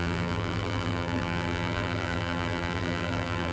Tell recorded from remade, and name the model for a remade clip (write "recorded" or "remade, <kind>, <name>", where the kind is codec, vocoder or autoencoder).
remade, vocoder, BigVGAN v2